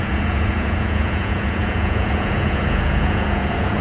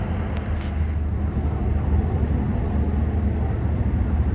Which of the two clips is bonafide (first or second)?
second